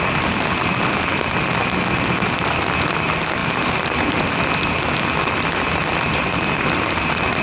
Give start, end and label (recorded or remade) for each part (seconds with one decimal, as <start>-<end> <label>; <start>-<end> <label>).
0.0-7.4 recorded